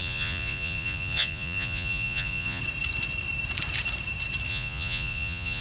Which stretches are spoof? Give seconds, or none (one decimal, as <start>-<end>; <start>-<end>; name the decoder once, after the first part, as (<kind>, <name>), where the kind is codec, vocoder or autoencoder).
0.0-2.6 (vocoder, Vocos); 4.5-5.6